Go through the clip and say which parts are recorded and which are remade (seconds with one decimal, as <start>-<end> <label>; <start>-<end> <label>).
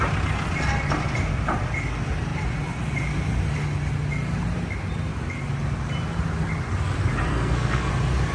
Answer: 0.0-7.3 recorded; 7.3-7.9 remade; 7.9-8.3 recorded